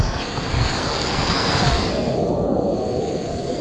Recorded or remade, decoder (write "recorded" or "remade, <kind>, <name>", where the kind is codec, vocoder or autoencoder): remade, codec, SNAC